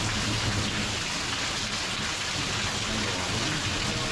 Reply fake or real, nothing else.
real